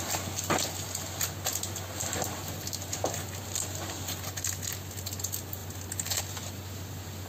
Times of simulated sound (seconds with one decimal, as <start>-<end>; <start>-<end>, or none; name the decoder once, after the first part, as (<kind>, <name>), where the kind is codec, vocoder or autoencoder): none